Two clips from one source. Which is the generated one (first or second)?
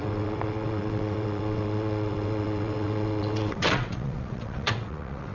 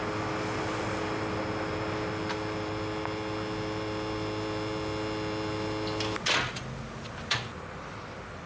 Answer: first